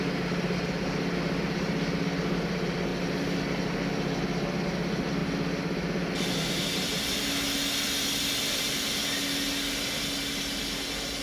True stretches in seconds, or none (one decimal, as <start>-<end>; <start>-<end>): 0.0-11.2